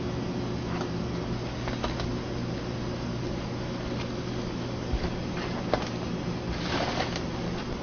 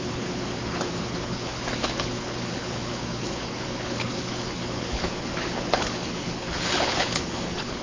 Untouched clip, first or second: first